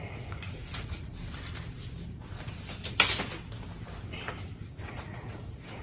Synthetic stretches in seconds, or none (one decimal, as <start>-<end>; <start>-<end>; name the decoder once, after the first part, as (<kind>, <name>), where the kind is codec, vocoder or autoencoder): 0.0-1.1 (vocoder, Vocos); 4.6-5.8